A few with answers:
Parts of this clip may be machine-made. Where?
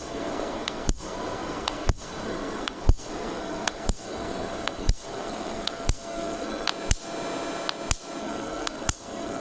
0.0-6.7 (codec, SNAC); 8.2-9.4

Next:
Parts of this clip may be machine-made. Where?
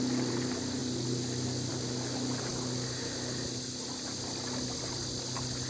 0.0-0.8 (vocoder, BigVGAN v2); 1.7-2.5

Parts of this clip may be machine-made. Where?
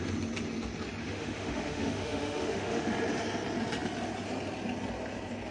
1.0-2.9 (autoencoder, DAC-VAE)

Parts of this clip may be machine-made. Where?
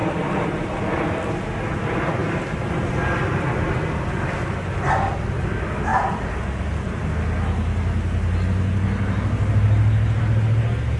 0.0-1.0 (vocoder, BigVGAN v2); 2.2-2.9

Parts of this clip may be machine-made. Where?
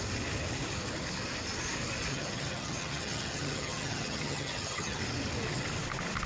2.1-5.0 (vocoder, HiFi-GAN)